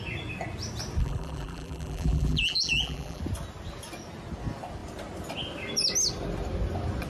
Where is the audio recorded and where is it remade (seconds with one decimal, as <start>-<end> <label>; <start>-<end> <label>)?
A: 0.0-1.0 recorded; 1.0-3.2 remade; 3.2-7.1 recorded